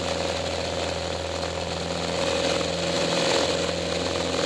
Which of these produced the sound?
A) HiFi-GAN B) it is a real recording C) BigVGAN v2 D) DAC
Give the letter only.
B